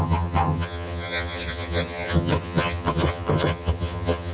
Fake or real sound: fake